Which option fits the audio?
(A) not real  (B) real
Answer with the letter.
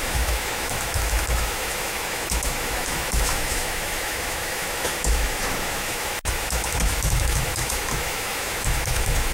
A